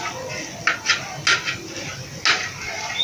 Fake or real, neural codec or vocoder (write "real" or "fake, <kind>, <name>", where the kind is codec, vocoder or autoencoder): real